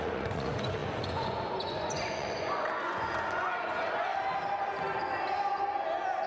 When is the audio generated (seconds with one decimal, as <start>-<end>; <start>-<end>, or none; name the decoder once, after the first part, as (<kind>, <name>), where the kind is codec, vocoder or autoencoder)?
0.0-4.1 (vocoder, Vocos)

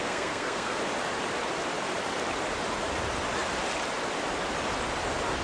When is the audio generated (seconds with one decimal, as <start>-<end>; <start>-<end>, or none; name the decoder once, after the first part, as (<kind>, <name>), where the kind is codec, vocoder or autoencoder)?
0.0-0.8 (codec, SNAC)

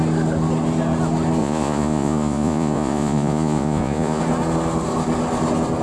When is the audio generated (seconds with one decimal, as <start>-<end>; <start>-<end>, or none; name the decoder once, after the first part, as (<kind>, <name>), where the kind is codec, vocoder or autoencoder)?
1.4-4.2 (vocoder, Vocos)

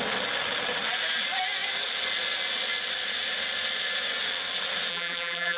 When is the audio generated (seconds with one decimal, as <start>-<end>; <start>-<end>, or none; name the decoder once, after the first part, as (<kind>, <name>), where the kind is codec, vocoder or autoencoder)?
4.9-5.6 (vocoder, BigVGAN v2)

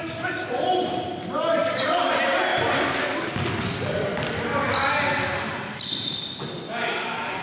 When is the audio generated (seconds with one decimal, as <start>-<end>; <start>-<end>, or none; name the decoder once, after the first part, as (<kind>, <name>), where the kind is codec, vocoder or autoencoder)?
1.6-2.1 (codec, DAC)

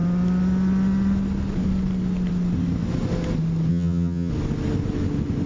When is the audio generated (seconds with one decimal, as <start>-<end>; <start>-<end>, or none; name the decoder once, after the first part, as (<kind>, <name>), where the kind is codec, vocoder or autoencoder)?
3.7-4.3 (vocoder, HiFi-GAN)

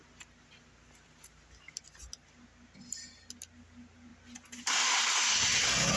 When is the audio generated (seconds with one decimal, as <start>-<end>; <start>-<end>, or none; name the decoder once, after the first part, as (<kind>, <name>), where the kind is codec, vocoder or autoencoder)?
none